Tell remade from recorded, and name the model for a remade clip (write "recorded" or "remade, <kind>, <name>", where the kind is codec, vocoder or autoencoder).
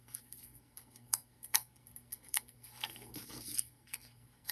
remade, codec, SNAC